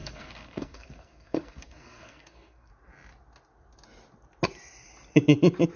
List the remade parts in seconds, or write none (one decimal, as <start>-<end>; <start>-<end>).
0.0-2.7